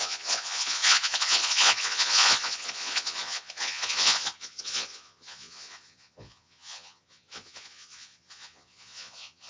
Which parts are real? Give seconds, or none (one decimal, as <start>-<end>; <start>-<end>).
none